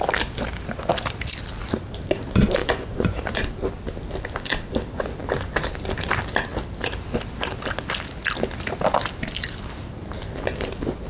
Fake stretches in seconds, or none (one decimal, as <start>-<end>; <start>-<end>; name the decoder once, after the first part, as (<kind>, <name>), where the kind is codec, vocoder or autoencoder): 2.6-3.5 (vocoder, Vocos)